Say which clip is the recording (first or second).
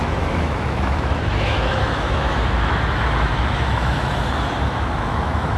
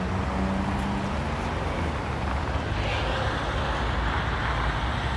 second